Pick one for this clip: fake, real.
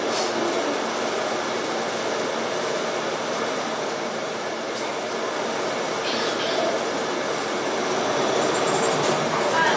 real